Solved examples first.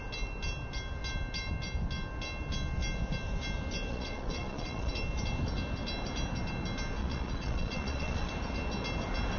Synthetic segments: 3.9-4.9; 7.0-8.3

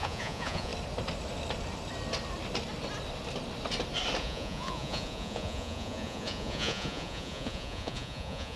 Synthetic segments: 0.0-0.7; 4.2-8.6

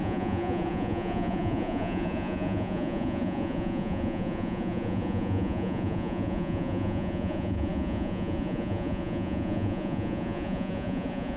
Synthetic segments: 0.0-11.4

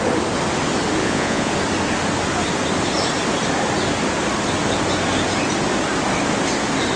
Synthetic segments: 1.0-1.5

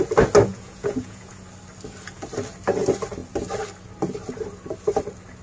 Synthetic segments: 0.5-1.4

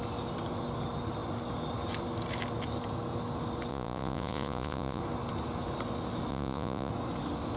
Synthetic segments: 3.7-5.0; 6.3-6.9

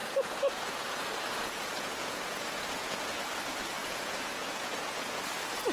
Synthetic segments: 0.0-3.2; 3.8-5.2